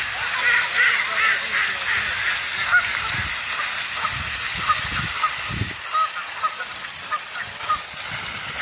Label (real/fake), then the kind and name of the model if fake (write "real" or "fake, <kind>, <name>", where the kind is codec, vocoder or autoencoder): real